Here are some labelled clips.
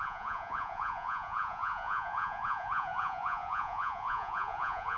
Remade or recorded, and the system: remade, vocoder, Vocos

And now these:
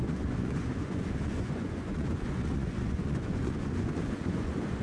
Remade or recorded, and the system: remade, vocoder, Vocos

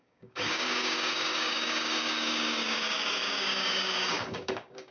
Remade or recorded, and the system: remade, codec, DAC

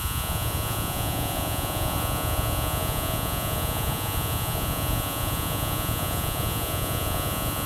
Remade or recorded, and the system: remade, vocoder, Vocos